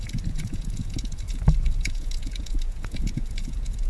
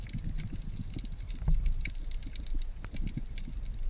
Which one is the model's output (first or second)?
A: first